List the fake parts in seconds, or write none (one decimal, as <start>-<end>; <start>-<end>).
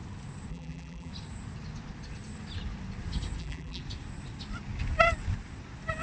0.5-1.1; 3.4-3.8